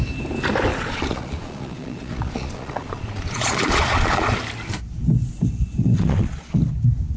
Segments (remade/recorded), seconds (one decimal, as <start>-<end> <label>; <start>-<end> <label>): 0.0-0.7 recorded; 0.7-4.3 remade; 4.3-5.8 recorded; 5.8-6.6 remade; 6.6-7.2 recorded

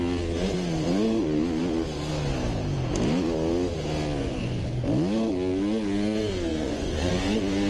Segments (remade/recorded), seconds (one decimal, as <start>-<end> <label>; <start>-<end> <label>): 0.0-4.2 recorded; 4.2-4.8 remade; 4.8-6.5 recorded; 6.5-7.1 remade; 7.1-7.7 recorded

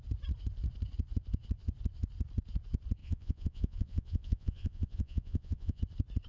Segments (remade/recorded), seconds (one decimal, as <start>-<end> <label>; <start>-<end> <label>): 0.0-3.0 recorded; 3.0-5.8 remade; 5.8-6.3 recorded

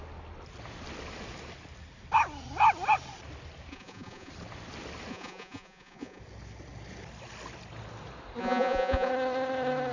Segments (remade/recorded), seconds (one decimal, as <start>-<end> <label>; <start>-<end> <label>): 0.0-3.7 recorded; 3.7-4.3 remade; 4.3-5.1 recorded; 5.1-6.2 remade; 6.2-8.4 recorded; 8.4-9.1 remade; 9.1-9.9 recorded

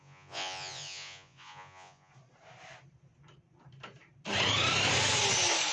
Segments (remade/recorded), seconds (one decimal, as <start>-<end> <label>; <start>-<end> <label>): 0.0-2.1 remade; 2.1-5.7 recorded

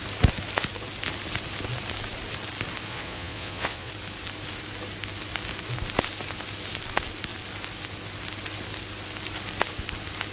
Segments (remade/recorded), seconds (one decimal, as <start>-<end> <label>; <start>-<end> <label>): 0.0-2.9 recorded; 2.9-3.9 remade; 3.9-10.3 recorded